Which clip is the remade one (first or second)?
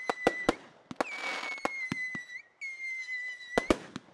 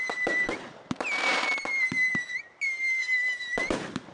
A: second